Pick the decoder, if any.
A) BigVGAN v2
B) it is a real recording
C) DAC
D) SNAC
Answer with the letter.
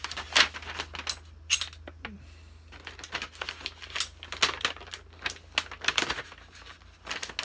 B